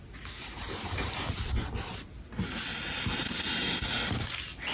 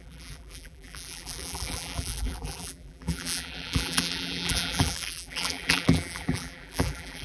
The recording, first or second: first